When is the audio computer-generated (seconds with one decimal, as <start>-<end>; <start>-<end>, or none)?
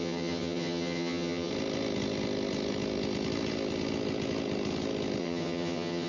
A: 0.0-1.5; 5.2-6.1